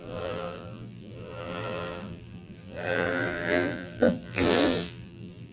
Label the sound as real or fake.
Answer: fake